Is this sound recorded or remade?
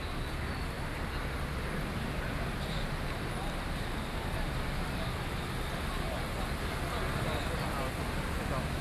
recorded